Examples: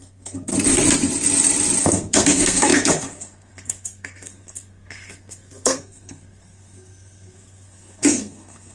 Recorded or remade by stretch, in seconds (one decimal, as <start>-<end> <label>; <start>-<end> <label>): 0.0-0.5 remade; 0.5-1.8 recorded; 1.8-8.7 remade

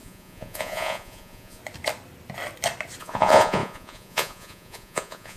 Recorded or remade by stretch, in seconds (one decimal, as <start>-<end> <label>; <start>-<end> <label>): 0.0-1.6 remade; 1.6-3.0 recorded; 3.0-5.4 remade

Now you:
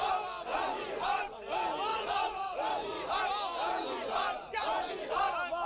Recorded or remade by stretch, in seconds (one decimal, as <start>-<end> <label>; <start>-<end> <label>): 0.0-0.5 recorded; 0.5-1.4 remade; 1.4-1.9 recorded; 1.9-3.1 remade; 3.1-3.8 recorded; 3.8-5.2 remade; 5.2-5.7 recorded